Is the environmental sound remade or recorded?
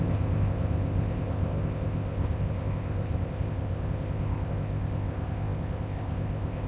remade